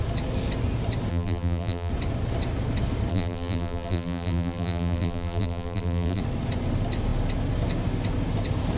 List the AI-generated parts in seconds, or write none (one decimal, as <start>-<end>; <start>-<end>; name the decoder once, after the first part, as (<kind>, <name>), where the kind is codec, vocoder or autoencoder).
1.1-1.9 (vocoder, BigVGAN v2); 3.1-6.2